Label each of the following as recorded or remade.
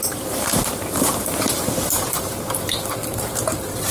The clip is remade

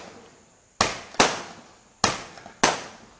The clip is recorded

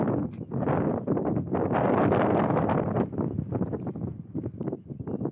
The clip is recorded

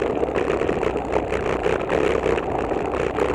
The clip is recorded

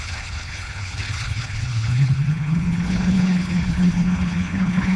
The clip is remade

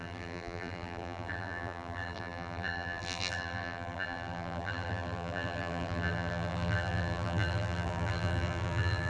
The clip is remade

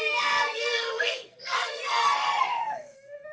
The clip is remade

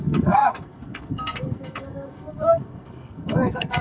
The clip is remade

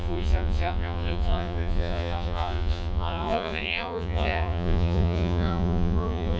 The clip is remade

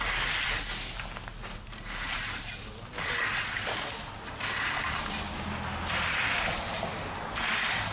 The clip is recorded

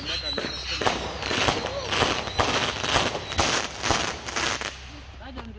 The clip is recorded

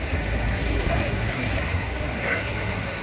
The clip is remade